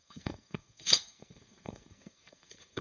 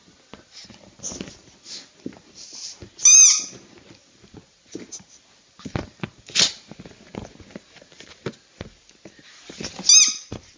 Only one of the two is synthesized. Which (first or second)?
first